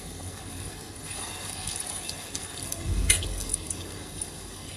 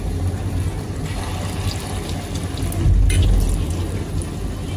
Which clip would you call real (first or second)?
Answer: second